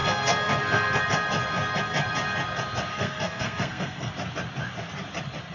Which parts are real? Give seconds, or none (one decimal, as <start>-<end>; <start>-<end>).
1.0-2.9; 4.1-5.5